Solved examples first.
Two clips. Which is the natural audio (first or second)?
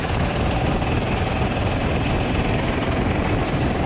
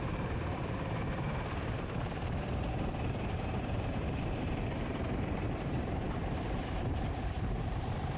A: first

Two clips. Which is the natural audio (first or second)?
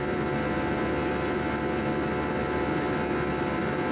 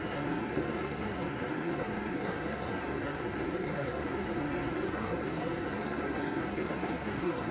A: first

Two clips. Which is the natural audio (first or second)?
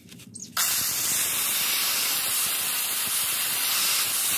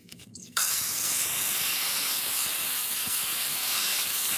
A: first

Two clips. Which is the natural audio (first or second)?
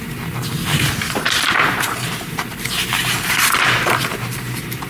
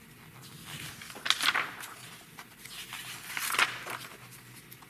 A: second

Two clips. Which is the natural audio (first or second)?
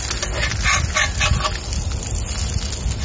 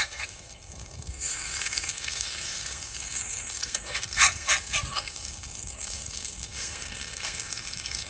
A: first